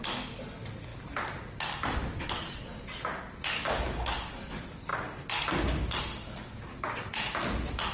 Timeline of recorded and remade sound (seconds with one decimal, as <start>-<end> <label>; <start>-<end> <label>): 0.0-7.9 recorded